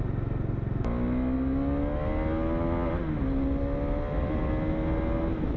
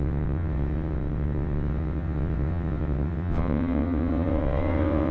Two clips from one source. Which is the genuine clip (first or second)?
first